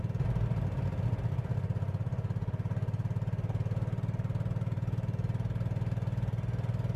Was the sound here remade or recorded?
recorded